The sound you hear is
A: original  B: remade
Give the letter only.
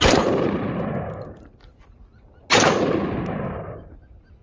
A